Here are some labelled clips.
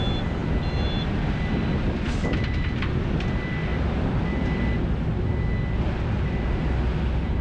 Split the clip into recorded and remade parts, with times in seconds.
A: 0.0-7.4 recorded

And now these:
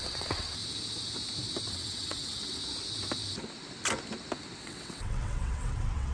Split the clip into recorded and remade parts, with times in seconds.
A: 0.0-0.6 remade; 0.6-1.7 recorded; 1.7-2.6 remade; 2.6-4.6 recorded; 4.6-6.1 remade